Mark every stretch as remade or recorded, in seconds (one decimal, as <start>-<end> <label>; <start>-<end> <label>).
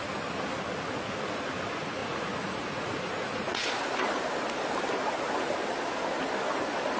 0.0-2.0 recorded; 2.0-3.7 remade; 3.7-7.0 recorded